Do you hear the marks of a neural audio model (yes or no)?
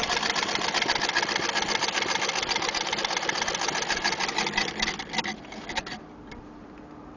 no